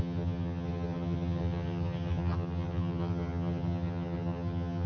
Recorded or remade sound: remade